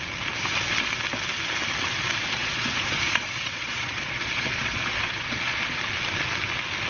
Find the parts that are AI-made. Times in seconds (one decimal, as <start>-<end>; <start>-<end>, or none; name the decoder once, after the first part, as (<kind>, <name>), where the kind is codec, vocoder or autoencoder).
2.4-5.8 (vocoder, Vocos)